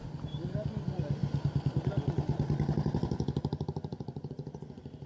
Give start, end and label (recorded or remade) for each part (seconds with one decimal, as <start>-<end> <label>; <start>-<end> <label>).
0.0-5.1 recorded